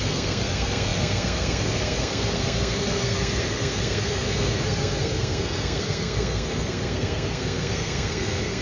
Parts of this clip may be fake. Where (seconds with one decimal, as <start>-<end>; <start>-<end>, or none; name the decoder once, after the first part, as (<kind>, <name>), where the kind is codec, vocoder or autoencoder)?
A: 0.0-8.6 (codec, SNAC)